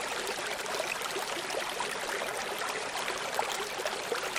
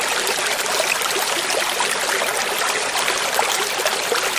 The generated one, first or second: first